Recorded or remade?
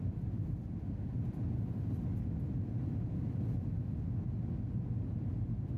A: recorded